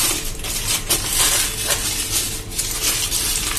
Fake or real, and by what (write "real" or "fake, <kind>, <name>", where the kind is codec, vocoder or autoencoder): real